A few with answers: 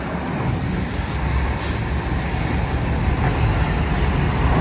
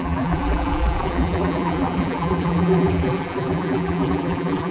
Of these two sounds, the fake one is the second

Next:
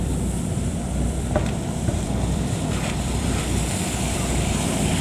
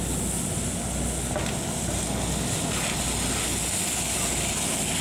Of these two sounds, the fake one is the first